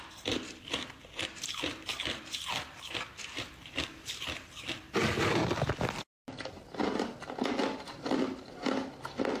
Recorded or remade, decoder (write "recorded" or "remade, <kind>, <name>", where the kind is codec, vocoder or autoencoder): remade, vocoder, BigVGAN v2